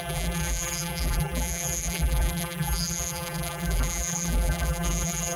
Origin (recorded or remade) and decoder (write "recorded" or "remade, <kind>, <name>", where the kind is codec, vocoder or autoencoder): remade, vocoder, BigVGAN v2